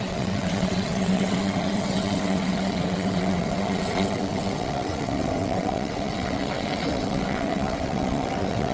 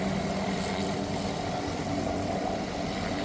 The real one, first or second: second